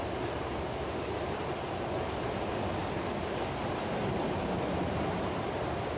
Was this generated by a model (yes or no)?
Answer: no